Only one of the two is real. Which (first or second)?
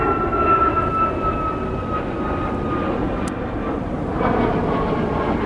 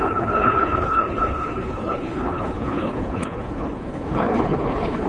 first